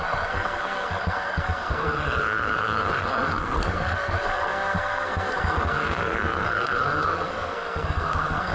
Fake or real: fake